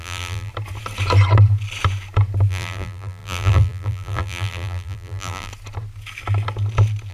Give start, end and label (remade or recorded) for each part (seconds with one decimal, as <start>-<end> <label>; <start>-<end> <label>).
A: 0.0-0.5 remade; 0.5-2.5 recorded; 2.5-5.5 remade; 5.5-7.1 recorded